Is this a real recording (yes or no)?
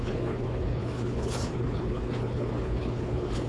no